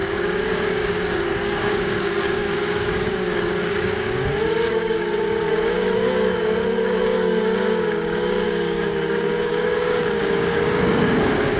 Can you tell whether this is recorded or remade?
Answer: remade